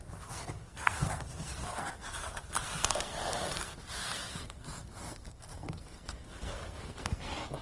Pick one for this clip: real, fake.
fake